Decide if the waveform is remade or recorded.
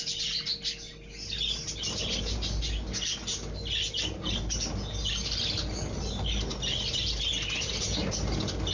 recorded